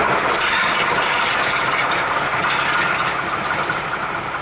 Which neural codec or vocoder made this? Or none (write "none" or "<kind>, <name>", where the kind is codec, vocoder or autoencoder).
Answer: none